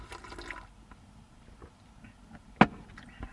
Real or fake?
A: real